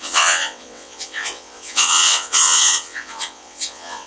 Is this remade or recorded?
remade